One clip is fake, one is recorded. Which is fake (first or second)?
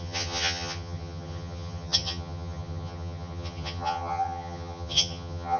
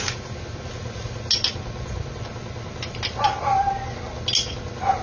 first